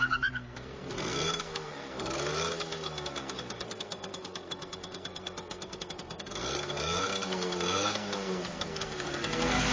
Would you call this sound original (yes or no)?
no